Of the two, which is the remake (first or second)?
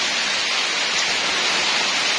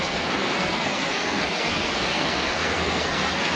second